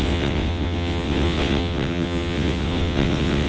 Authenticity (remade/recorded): remade